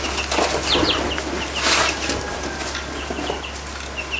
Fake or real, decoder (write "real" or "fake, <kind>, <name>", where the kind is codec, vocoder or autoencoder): real